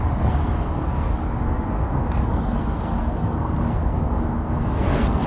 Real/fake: fake